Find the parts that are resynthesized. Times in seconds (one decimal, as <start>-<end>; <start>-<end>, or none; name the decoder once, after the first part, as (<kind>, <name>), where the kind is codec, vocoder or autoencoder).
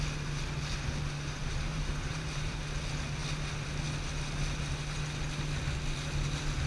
1.4-2.6 (vocoder, BigVGAN v2)